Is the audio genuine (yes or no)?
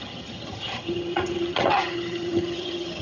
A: no